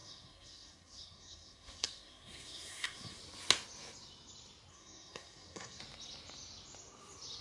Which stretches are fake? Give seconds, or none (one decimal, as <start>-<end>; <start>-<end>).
0.0-3.2; 4.7-5.8